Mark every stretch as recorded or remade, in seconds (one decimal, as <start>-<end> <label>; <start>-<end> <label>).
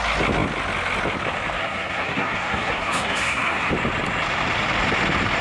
0.0-1.6 recorded; 1.6-3.7 remade; 3.7-5.4 recorded